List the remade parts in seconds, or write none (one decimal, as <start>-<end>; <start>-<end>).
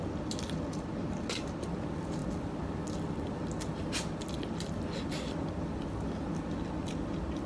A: none